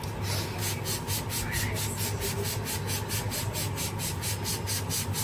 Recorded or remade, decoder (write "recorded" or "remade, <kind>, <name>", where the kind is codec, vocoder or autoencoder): recorded